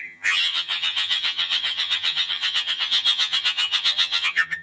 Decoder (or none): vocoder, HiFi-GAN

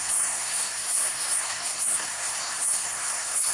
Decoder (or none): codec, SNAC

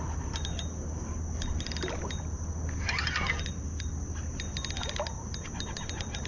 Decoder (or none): none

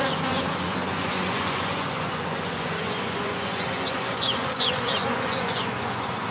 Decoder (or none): vocoder, Vocos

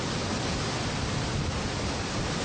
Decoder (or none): none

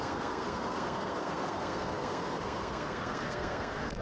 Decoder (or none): codec, SNAC